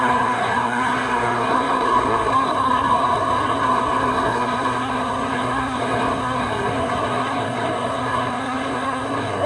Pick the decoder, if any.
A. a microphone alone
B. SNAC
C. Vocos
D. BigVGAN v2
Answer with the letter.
B